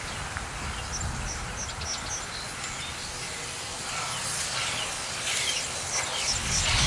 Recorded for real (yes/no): yes